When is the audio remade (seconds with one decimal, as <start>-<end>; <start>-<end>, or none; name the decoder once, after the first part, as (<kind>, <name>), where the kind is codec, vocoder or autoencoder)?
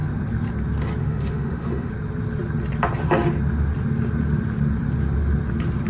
1.0-1.9 (autoencoder, DAC-VAE)